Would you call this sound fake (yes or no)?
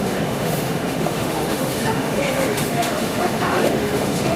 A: yes